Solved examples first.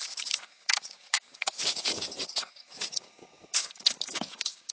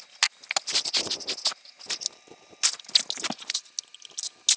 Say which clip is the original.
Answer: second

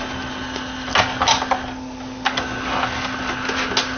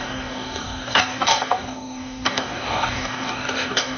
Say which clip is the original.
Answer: first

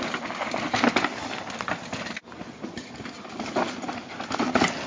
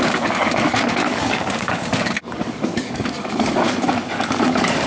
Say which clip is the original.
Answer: first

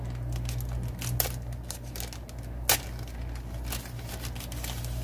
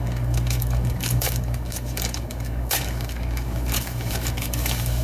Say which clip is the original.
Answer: first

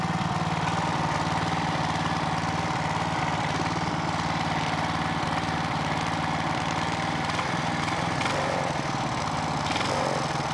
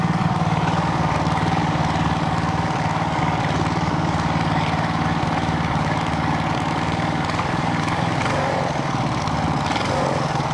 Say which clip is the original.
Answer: first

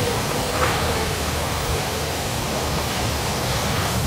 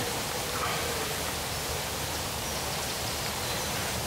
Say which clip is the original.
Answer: second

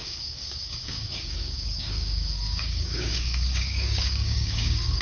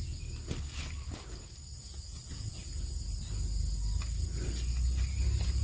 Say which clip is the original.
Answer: second